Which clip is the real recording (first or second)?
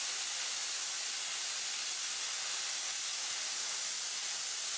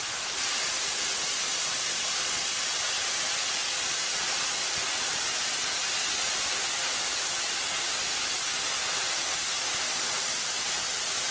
first